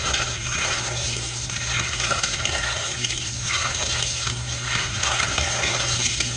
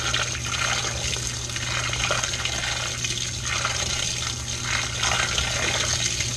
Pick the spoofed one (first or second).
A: first